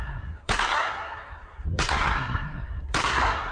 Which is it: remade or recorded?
remade